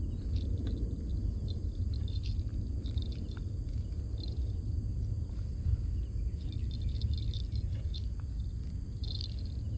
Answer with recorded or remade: recorded